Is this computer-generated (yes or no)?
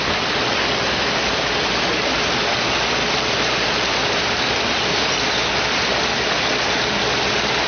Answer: no